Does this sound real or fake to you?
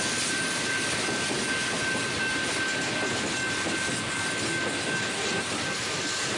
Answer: real